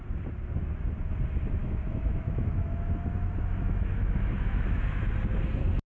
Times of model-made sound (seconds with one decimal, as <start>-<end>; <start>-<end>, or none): 1.6-5.1